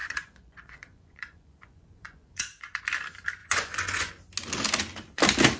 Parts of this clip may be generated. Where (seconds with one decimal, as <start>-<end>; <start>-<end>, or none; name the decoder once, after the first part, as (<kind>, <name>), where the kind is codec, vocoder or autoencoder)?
0.0-2.8 (vocoder, Vocos); 3.4-4.1